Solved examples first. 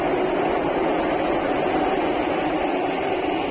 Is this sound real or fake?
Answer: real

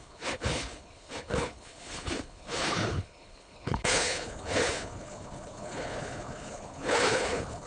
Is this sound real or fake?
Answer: fake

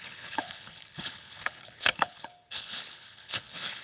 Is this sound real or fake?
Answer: fake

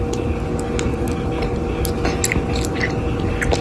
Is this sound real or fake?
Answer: real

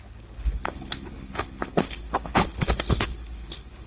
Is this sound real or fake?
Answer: fake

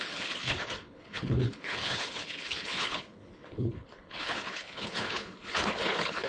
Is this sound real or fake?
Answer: fake